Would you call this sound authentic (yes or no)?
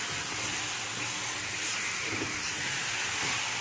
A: yes